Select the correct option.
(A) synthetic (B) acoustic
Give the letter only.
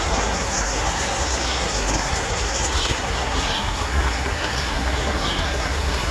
A